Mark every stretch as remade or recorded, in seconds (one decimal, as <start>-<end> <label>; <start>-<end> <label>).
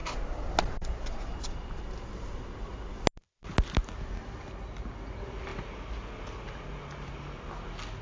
0.0-8.0 recorded